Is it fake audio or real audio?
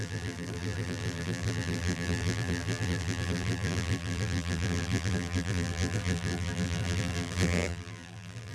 fake